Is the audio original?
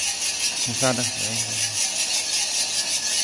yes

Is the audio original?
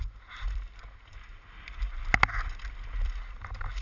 yes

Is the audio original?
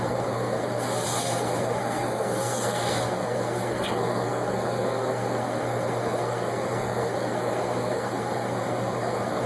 no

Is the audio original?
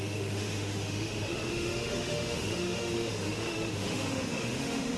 no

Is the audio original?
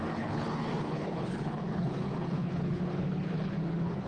no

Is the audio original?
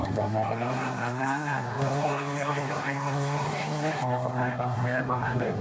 no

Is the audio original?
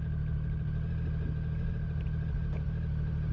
yes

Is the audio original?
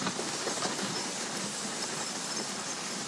yes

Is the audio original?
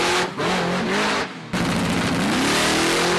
yes